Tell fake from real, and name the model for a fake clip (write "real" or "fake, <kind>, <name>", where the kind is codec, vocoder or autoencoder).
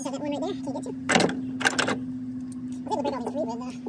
real